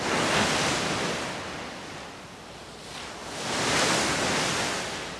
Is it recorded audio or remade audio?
recorded